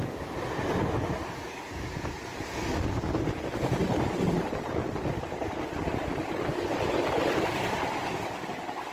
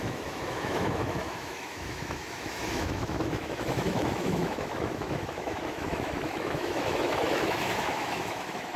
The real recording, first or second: first